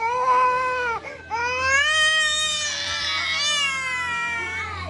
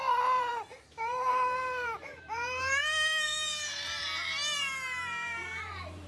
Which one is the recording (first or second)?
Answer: first